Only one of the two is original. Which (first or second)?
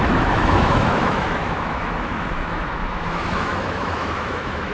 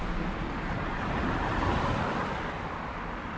second